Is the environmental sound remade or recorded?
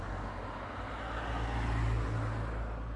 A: recorded